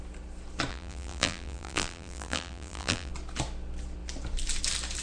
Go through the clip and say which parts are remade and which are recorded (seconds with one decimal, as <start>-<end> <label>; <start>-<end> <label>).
0.0-0.7 recorded; 0.7-3.1 remade; 3.1-5.0 recorded